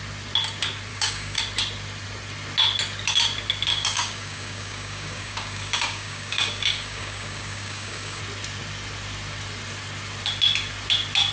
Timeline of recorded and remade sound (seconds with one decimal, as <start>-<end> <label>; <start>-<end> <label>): 0.0-0.9 recorded; 0.9-1.4 remade; 1.4-3.7 recorded; 3.7-8.2 remade; 8.2-11.3 recorded